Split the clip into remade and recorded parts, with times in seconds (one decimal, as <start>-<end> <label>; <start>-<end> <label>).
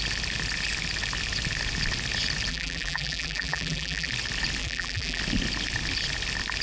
0.0-2.5 recorded; 2.5-4.1 remade; 4.1-4.6 recorded; 4.6-5.2 remade; 5.2-6.6 recorded